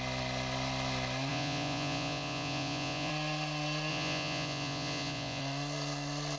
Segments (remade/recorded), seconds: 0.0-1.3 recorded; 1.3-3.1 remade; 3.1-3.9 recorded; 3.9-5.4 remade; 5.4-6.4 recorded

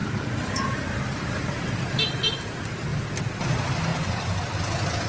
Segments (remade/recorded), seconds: 0.0-3.9 recorded; 3.9-5.1 remade